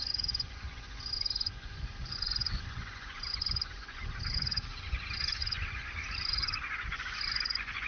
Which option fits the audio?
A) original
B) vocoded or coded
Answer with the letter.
B